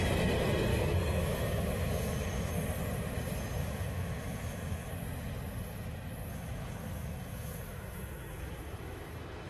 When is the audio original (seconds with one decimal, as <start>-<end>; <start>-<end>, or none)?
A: 0.0-0.7; 2.5-3.6; 4.9-6.3